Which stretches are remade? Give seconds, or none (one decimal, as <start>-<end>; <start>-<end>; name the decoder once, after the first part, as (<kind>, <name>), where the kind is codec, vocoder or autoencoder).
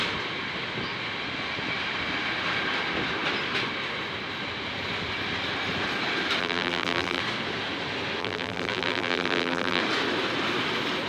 6.4-7.2 (vocoder, BigVGAN v2); 8.2-9.8